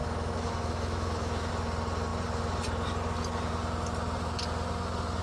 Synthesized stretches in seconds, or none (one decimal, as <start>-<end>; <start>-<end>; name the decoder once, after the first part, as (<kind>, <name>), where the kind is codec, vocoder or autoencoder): 0.0-1.5 (autoencoder, DAC-VAE)